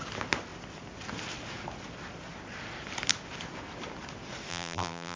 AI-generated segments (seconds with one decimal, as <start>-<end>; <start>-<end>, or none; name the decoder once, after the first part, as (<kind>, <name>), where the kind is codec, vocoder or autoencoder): 4.5-5.2 (vocoder, BigVGAN v2)